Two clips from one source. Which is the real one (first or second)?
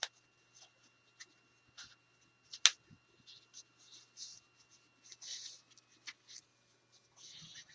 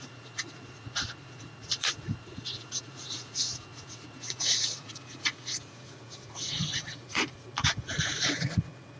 first